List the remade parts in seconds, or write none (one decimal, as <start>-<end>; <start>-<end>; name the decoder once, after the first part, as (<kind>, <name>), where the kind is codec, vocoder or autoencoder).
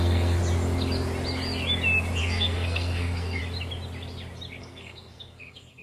0.0-0.4 (codec, SNAC); 2.2-3.4; 4.6-5.8